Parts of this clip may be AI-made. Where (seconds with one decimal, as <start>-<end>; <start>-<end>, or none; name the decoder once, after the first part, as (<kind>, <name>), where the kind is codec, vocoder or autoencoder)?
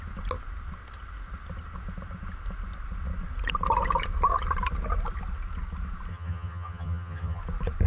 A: 6.1-7.4 (vocoder, HiFi-GAN)